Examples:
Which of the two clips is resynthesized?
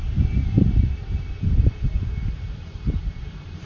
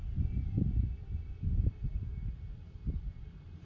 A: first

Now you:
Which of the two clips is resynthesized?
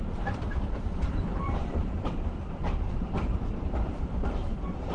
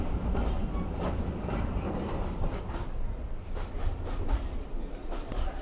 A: first